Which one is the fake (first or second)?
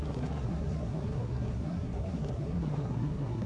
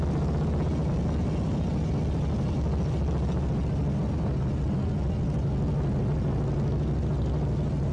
first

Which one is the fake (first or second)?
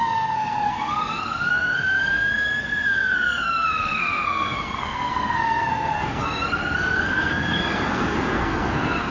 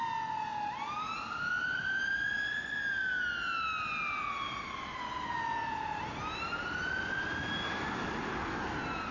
first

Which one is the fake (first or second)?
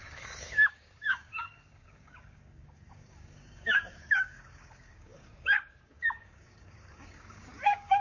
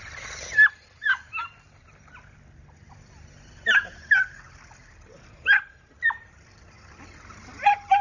first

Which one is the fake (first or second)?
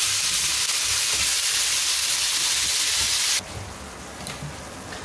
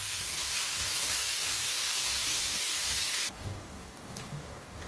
second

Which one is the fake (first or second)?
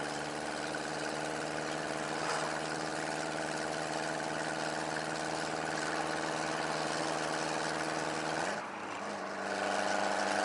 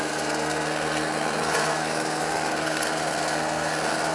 second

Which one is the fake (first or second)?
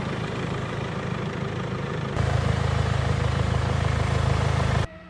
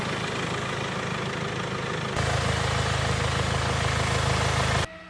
first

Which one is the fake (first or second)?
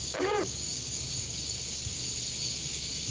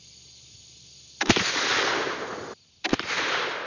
first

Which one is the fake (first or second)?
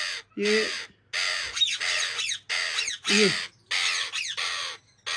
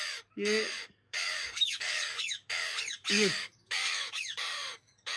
second